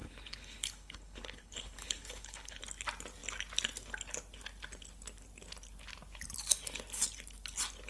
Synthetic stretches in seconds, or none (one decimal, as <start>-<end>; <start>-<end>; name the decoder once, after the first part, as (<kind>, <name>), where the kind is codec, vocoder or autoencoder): 0.0-2.6 (codec, HILCodec)